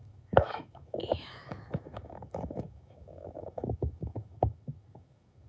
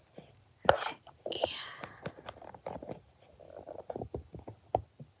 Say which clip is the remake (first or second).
first